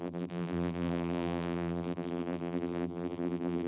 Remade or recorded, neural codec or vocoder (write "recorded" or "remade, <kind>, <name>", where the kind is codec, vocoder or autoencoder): remade, vocoder, BigVGAN v2